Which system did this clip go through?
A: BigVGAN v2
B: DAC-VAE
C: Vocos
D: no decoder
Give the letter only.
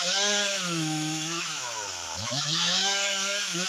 B